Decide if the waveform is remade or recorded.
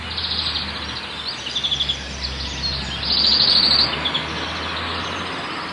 recorded